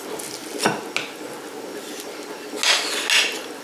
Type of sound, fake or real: real